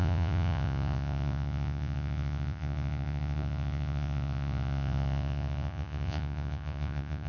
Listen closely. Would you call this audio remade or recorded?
remade